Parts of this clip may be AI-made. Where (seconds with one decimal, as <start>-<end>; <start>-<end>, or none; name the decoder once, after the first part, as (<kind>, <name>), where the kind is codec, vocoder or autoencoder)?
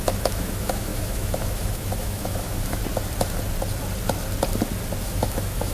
0.0-2.8 (autoencoder, DAC-VAE); 5.0-5.7